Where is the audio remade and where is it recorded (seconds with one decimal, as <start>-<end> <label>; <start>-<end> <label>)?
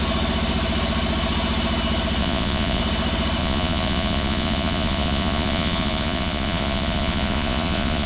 0.0-2.2 recorded; 2.2-2.8 remade; 2.8-3.4 recorded; 3.4-8.1 remade